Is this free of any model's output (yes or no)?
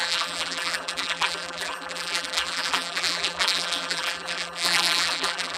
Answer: no